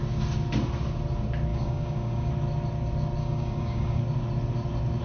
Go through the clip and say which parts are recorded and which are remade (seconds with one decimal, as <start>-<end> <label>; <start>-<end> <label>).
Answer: 0.0-1.5 recorded; 1.5-2.3 remade; 2.3-3.2 recorded; 3.2-4.0 remade; 4.0-5.0 recorded